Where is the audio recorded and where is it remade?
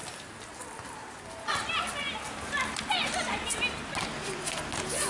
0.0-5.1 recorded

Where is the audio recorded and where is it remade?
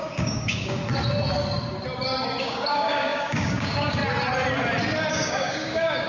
0.0-0.8 remade; 0.8-2.4 recorded; 2.4-4.0 remade; 4.0-5.1 recorded; 5.1-6.1 remade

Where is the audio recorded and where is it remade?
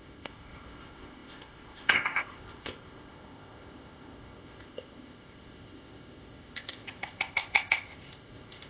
0.0-8.7 remade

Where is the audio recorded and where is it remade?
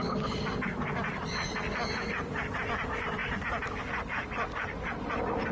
0.0-5.5 recorded